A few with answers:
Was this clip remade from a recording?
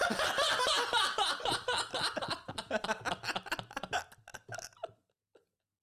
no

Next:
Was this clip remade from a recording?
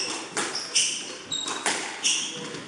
no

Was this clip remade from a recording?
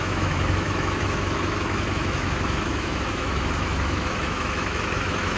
yes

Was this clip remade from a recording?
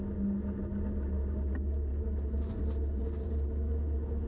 no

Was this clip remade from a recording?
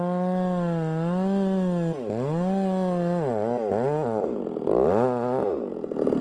no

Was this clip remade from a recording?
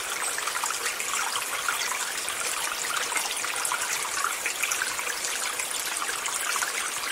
no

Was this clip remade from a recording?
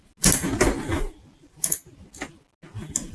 no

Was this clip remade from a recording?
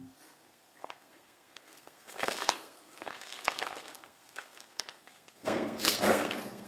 yes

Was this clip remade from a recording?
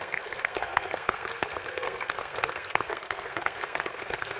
yes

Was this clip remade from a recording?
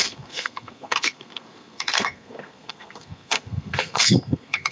yes